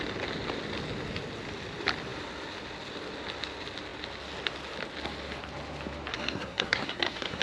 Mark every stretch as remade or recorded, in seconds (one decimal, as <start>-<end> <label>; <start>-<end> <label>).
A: 0.0-6.1 recorded; 6.1-7.4 remade